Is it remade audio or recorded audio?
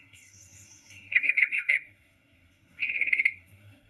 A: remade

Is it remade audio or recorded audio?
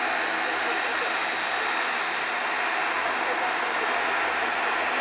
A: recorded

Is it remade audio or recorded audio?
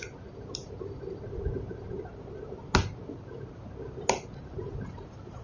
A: recorded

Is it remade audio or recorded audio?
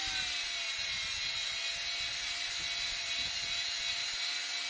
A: recorded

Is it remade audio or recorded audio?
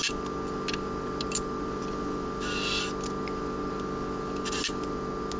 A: recorded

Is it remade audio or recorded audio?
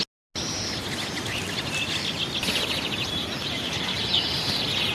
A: recorded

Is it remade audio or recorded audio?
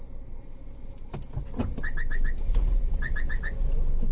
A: recorded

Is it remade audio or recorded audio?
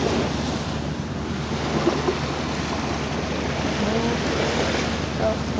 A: recorded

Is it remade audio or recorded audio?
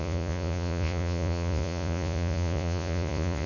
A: remade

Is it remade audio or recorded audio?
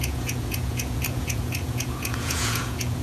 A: remade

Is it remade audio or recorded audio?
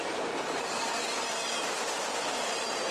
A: recorded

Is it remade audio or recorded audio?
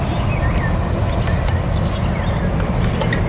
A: recorded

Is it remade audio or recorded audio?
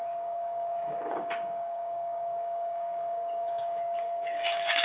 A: remade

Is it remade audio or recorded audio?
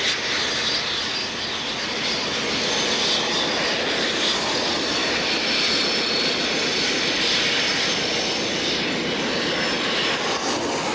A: recorded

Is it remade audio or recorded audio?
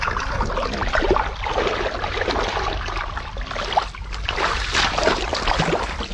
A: recorded